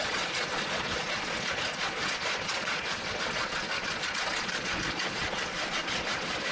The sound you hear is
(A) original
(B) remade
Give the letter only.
B